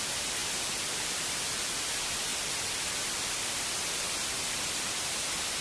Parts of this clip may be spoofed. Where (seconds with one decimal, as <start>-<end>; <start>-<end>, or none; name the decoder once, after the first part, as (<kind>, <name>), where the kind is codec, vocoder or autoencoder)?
0.4-1.8 (vocoder, BigVGAN v2); 2.3-5.1